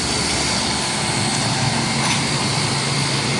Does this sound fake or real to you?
fake